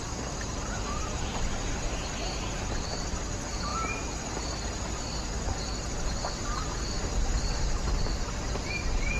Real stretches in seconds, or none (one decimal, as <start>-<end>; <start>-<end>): 3.7-8.7